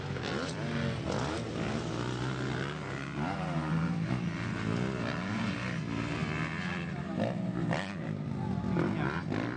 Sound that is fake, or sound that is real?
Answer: real